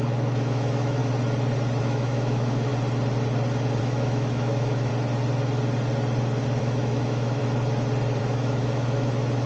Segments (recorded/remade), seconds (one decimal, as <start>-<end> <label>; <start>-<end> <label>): 0.0-1.0 remade; 1.0-1.8 recorded; 1.8-2.7 remade; 2.7-3.8 recorded; 3.8-4.9 remade; 4.9-6.6 recorded; 6.6-7.4 remade; 7.4-8.2 recorded; 8.2-9.5 remade